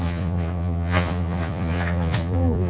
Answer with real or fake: fake